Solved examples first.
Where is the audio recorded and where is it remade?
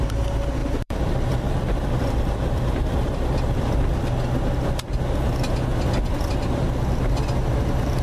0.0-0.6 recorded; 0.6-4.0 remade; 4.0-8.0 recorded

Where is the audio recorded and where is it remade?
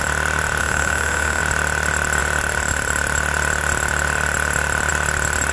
0.0-0.6 recorded; 0.6-1.4 remade; 1.4-5.5 recorded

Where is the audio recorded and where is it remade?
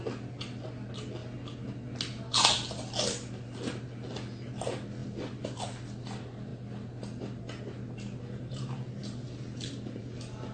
0.0-10.5 recorded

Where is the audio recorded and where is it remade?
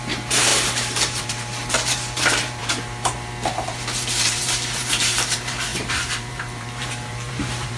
0.0-7.8 remade